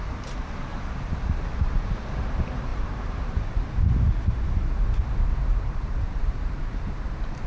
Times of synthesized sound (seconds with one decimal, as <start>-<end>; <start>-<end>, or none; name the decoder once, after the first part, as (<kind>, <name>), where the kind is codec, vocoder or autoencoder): 0.7-1.9 (vocoder, BigVGAN v2); 2.7-6.6